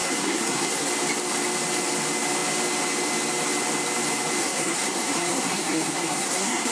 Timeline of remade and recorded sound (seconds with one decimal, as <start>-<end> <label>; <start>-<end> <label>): 0.0-0.9 remade; 0.9-4.4 recorded; 4.4-6.7 remade

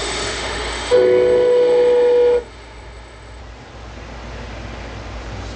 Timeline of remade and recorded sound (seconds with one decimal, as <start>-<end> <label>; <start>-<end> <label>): 0.0-3.4 remade; 3.4-5.6 recorded

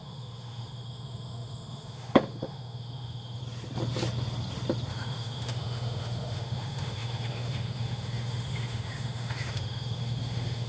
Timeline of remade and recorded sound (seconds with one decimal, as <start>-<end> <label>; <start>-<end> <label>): 0.0-3.4 remade; 3.4-4.9 recorded; 4.9-10.7 remade